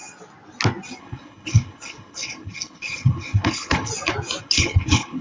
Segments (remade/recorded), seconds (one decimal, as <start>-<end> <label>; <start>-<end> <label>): 0.0-1.0 recorded; 1.0-3.9 remade; 3.9-4.4 recorded; 4.4-5.2 remade